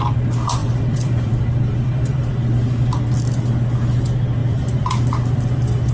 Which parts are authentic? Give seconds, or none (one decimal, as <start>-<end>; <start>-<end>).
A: 0.0-0.6; 2.3-4.4; 4.9-5.9